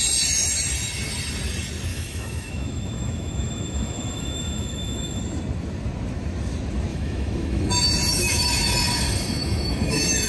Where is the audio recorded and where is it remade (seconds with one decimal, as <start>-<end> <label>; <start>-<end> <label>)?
0.0-1.9 recorded; 1.9-5.2 remade; 5.2-6.9 recorded; 6.9-7.7 remade; 7.7-8.1 recorded; 8.1-10.3 remade